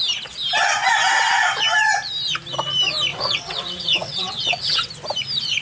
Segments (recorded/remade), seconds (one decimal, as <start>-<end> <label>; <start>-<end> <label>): 0.0-3.1 recorded; 3.1-4.9 remade; 4.9-5.6 recorded

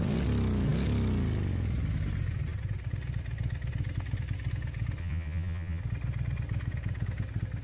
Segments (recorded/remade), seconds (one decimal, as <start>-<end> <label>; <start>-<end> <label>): 0.0-5.0 recorded; 5.0-5.8 remade; 5.8-7.6 recorded

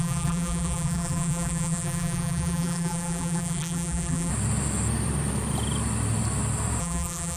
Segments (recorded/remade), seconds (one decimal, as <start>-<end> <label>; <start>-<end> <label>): 0.0-4.3 remade; 4.3-6.8 recorded; 6.8-7.4 remade